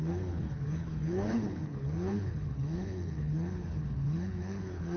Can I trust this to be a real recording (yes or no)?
no